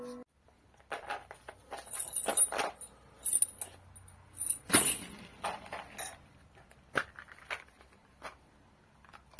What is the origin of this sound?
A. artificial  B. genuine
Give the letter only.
B